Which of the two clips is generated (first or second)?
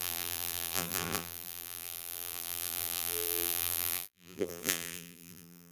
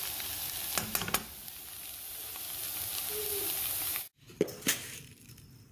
first